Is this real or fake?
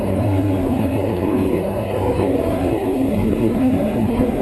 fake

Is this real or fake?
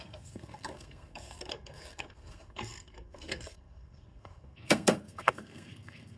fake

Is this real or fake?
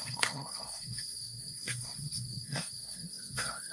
fake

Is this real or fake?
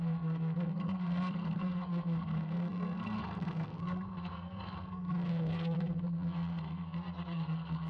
fake